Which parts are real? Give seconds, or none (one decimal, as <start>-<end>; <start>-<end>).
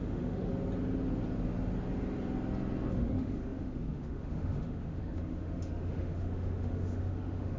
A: 0.5-2.9